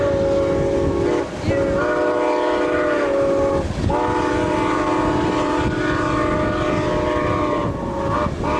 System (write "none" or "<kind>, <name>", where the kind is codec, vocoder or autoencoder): none